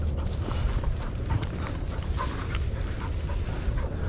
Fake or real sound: real